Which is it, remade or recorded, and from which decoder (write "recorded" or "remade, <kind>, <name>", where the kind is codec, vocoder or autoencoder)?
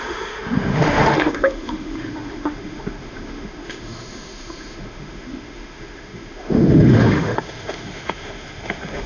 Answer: remade, autoencoder, DAC-VAE